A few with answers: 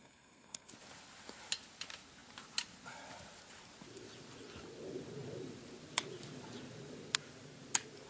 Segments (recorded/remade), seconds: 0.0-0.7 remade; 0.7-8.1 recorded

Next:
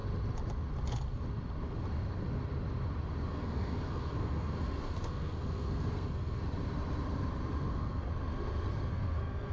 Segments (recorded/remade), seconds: 0.0-3.3 recorded; 3.3-6.4 remade; 6.4-7.7 recorded; 7.7-8.1 remade; 8.1-8.9 recorded; 8.9-9.5 remade

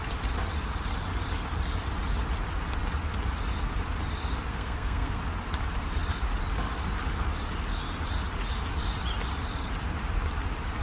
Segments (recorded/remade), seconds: 0.0-4.5 recorded; 4.5-5.2 remade; 5.2-10.8 recorded

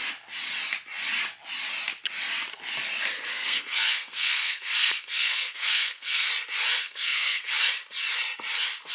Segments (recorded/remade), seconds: 0.0-3.3 recorded; 3.3-6.3 remade; 6.3-6.8 recorded; 6.8-7.5 remade; 7.5-8.9 recorded